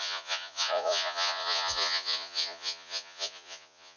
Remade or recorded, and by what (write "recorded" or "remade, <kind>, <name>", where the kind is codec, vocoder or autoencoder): remade, vocoder, Vocos